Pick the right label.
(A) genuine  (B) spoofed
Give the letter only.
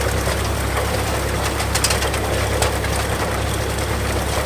A